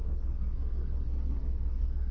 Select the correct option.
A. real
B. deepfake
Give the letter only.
B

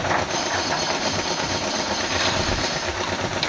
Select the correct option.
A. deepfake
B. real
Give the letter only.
B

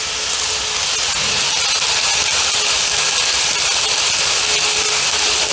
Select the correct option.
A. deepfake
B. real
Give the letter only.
B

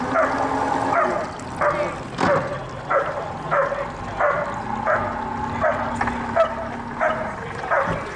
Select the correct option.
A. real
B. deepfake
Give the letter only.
A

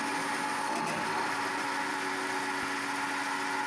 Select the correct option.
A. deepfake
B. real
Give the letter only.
B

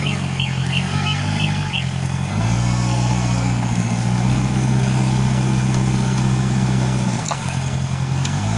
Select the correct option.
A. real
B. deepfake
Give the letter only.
B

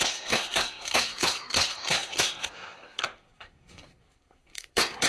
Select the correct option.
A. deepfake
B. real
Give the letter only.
A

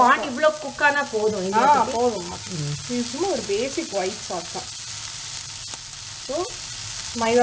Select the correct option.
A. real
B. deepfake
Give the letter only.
A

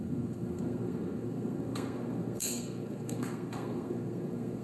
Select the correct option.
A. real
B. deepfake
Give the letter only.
B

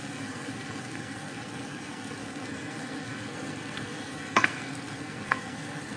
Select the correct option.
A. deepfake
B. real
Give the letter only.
A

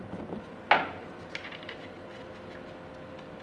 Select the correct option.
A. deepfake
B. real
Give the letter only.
B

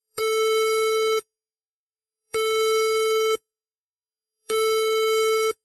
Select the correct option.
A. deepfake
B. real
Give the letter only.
A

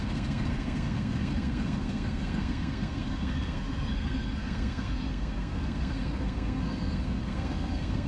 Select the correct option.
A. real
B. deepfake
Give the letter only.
B